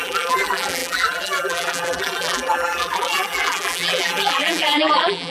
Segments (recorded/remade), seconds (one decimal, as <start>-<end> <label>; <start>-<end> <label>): 0.0-5.3 remade